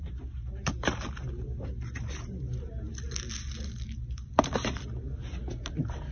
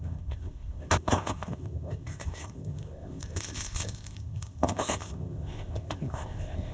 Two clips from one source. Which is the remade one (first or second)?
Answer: second